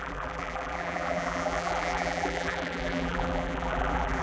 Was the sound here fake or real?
fake